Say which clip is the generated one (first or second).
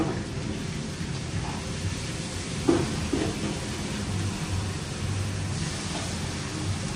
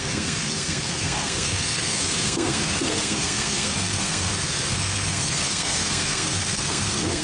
second